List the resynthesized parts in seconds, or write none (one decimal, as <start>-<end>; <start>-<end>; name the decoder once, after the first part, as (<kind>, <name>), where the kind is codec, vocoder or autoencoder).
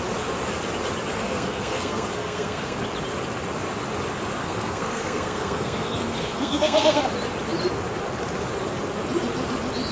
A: 1.1-2.8 (codec, SNAC); 4.4-7.0